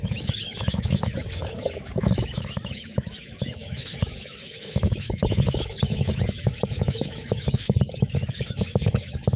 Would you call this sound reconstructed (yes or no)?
yes